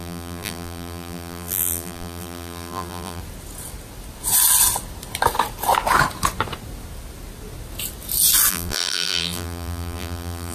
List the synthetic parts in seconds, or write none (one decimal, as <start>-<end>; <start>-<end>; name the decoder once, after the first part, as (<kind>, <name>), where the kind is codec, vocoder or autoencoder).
0.0-3.2 (vocoder, BigVGAN v2); 8.5-10.5